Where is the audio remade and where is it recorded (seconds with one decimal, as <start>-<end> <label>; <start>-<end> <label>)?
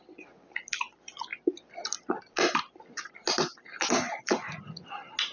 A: 0.0-5.3 recorded